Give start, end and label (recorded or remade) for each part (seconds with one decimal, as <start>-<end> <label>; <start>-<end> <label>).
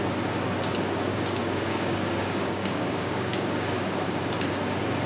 0.0-1.1 recorded; 1.1-4.2 remade; 4.2-5.1 recorded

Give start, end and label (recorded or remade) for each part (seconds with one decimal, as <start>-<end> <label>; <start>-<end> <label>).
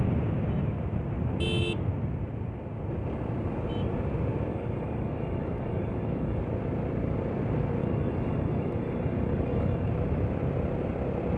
0.0-4.5 recorded; 4.5-6.4 remade; 6.4-7.8 recorded; 7.8-9.9 remade; 9.9-11.4 recorded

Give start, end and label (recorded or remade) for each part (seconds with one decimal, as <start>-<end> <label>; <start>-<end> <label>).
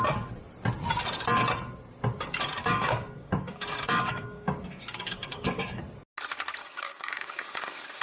0.0-2.6 recorded; 2.6-5.8 remade; 5.8-6.6 recorded; 6.6-8.0 remade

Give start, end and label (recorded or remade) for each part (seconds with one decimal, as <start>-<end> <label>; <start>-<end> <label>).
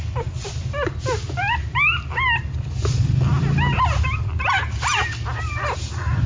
0.0-6.3 recorded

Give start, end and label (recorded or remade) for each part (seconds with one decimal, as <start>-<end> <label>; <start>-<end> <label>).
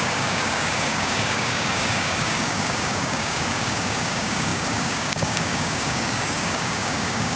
0.0-7.4 remade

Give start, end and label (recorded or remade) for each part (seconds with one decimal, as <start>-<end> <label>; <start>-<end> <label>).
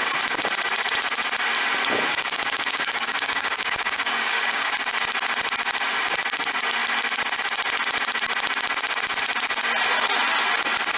0.0-2.1 recorded; 2.1-4.7 remade; 4.7-11.0 recorded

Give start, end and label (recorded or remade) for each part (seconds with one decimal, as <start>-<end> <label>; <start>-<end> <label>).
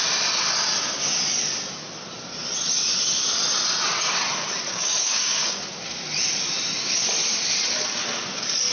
0.0-4.7 recorded; 4.7-5.6 remade; 5.6-8.7 recorded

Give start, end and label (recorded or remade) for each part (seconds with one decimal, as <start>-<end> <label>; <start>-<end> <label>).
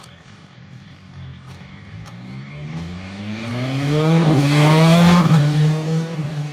0.0-6.5 remade